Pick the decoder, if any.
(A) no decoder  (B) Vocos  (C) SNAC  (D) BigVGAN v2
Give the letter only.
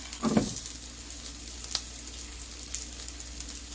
A